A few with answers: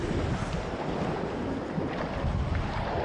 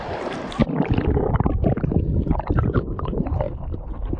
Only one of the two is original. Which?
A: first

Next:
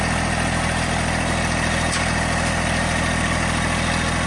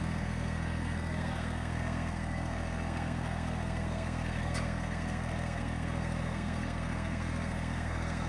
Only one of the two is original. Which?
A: first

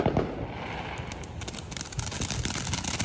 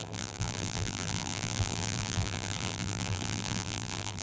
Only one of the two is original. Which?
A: first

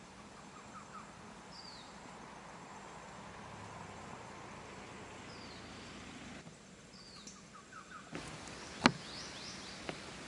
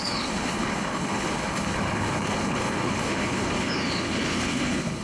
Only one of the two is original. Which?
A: first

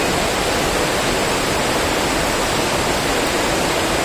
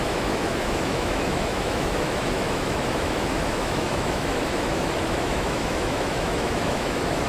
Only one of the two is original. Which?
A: first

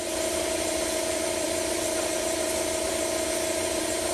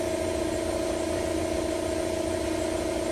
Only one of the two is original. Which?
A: second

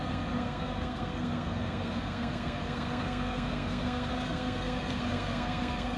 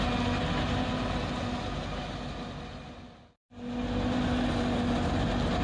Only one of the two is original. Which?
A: second